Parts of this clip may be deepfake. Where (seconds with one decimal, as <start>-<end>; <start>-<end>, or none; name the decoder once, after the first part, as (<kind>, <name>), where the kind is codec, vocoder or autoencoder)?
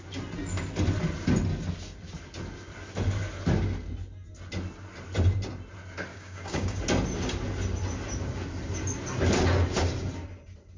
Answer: 6.1-6.8 (codec, DAC)